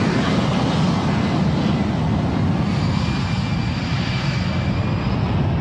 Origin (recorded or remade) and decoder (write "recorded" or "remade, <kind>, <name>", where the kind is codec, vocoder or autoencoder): recorded